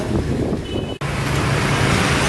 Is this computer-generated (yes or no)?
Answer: no